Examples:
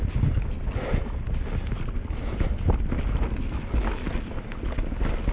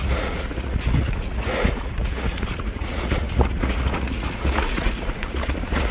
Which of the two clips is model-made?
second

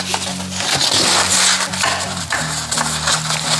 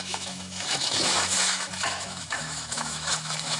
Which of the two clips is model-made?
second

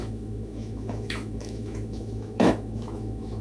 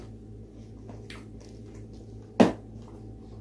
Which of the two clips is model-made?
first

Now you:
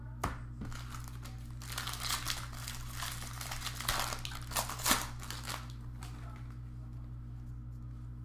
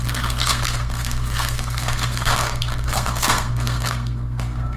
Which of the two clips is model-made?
second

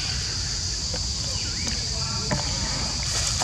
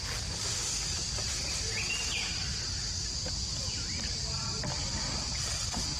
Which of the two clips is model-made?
second